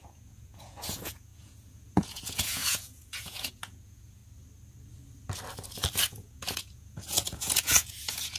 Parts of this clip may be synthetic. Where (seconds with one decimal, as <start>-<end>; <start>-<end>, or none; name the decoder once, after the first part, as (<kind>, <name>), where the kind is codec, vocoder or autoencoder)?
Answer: 0.0-4.2 (vocoder, Vocos); 6.0-8.4

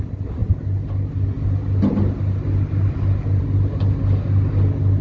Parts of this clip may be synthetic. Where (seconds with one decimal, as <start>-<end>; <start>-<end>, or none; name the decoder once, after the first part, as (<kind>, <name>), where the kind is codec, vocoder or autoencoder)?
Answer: none

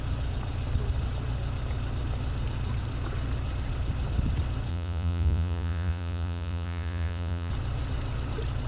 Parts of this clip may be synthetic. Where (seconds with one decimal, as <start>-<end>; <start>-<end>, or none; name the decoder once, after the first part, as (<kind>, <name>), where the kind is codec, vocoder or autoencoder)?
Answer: 4.7-7.5 (vocoder, Vocos)

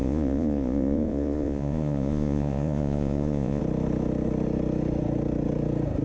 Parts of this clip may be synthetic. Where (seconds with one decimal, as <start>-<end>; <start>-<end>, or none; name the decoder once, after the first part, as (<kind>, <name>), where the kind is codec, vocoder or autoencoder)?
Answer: 0.0-3.6 (vocoder, Vocos)

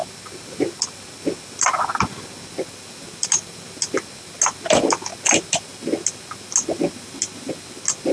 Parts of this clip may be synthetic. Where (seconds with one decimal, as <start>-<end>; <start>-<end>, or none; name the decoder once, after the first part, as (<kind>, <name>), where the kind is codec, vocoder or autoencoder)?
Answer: none

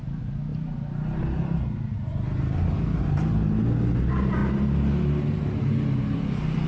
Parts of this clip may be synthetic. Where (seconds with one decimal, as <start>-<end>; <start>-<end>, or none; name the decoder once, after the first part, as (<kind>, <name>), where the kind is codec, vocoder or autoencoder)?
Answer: none

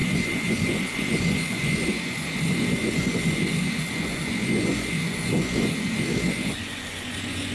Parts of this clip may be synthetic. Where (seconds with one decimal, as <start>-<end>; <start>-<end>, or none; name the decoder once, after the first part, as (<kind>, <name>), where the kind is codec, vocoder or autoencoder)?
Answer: 0.0-7.5 (vocoder, Vocos)

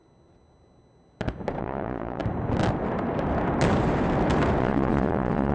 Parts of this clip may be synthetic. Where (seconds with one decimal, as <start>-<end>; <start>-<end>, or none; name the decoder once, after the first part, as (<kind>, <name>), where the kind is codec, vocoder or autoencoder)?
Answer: 1.6-2.2 (vocoder, Vocos); 4.6-5.5